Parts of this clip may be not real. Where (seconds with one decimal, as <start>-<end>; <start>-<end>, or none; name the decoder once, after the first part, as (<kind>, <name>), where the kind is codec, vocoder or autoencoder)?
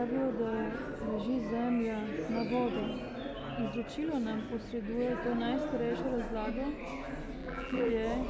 7.4-7.9 (vocoder, BigVGAN v2)